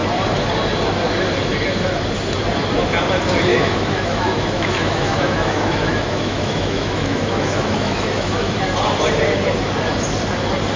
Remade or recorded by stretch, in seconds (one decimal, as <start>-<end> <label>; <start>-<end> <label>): 0.0-3.5 recorded; 3.5-8.6 remade; 8.6-10.8 recorded